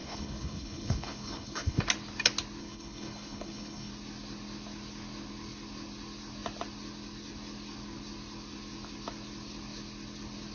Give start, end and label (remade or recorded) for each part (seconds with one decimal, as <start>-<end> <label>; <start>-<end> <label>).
0.0-1.8 remade; 1.8-2.6 recorded; 2.6-3.9 remade; 3.9-10.5 recorded